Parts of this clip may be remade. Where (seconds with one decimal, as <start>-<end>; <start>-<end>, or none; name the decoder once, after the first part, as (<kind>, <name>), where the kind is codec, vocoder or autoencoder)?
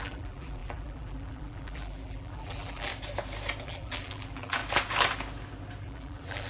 0.0-2.9 (vocoder, BigVGAN v2); 3.6-4.6; 5.8-6.5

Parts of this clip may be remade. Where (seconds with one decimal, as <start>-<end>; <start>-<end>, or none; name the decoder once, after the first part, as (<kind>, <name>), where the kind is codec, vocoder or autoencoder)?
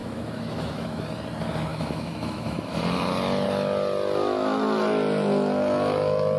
0.0-1.0 (autoencoder, DAC-VAE); 1.7-2.8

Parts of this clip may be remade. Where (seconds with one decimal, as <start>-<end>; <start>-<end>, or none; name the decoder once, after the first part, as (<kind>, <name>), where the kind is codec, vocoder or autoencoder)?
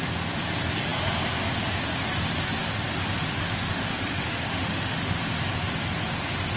3.3-5.2 (autoencoder, DAC-VAE)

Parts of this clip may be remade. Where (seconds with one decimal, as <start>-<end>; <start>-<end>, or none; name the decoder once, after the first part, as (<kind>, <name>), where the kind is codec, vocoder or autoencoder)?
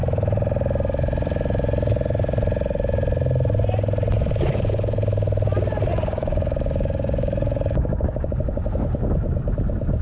5.9-9.5 (codec, DAC)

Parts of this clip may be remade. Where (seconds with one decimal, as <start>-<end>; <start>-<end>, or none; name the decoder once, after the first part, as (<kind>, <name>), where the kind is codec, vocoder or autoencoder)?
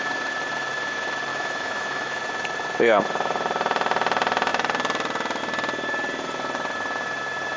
1.3-2.2 (autoencoder, DAC-VAE)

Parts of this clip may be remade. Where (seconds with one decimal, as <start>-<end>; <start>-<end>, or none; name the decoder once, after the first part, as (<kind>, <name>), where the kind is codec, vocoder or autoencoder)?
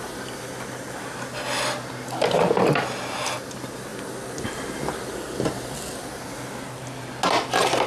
none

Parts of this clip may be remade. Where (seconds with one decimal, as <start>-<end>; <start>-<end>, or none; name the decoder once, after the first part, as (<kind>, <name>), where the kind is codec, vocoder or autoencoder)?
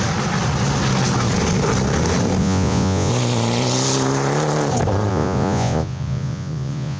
2.4-3.1 (vocoder, Vocos); 5.1-7.0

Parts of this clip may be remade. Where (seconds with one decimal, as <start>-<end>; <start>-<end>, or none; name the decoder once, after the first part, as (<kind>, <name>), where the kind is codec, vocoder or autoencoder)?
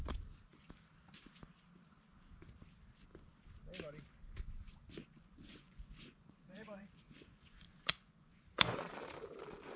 5.0-8.9 (vocoder, Vocos)